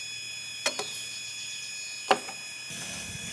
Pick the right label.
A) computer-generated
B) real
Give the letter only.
B